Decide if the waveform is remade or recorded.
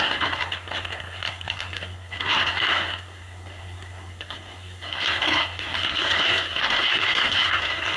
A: remade